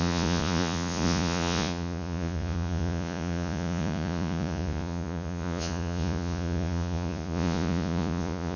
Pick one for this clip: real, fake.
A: fake